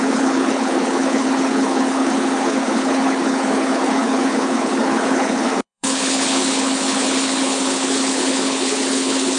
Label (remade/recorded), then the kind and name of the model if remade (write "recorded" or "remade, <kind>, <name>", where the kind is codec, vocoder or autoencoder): remade, codec, HILCodec